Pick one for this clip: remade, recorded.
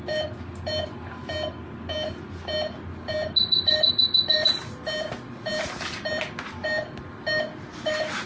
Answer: recorded